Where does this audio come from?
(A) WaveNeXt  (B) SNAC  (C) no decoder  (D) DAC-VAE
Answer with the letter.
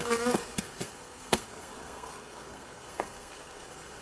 B